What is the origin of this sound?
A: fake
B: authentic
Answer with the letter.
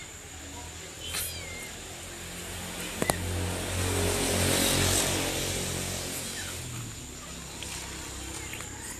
B